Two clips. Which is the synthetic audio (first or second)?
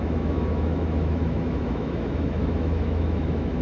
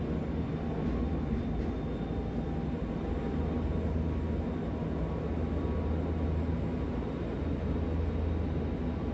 first